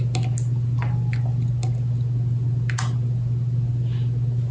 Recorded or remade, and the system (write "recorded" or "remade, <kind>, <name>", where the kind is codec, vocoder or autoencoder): recorded